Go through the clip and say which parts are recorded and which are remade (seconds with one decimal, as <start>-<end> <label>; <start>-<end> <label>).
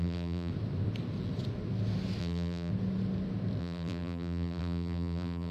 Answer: 0.0-0.5 remade; 0.5-2.2 recorded; 2.2-2.7 remade; 2.7-3.6 recorded; 3.6-5.5 remade